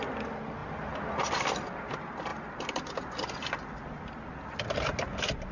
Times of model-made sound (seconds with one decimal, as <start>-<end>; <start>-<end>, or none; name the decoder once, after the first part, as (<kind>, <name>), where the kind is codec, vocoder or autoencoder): none